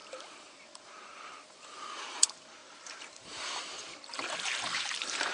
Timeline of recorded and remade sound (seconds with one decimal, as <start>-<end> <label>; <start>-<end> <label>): 0.0-5.3 remade